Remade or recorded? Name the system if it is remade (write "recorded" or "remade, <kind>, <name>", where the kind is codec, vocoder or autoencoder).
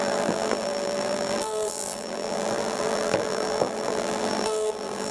remade, vocoder, BigVGAN v2